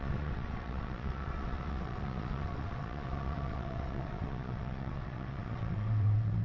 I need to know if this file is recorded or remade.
remade